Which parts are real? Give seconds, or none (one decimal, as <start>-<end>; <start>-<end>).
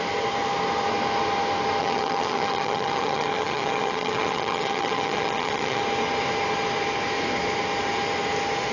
0.0-1.8; 5.8-8.7